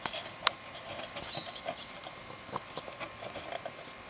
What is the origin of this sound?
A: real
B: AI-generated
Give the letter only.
A